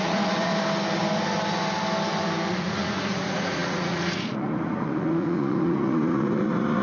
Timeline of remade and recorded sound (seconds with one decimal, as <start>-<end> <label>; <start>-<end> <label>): 0.0-0.5 remade; 0.5-2.5 recorded; 2.5-6.8 remade